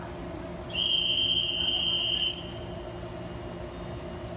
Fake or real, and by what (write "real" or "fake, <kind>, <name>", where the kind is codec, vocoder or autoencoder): real